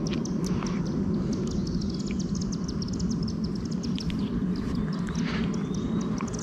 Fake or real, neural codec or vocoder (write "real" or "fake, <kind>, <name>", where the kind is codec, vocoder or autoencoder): real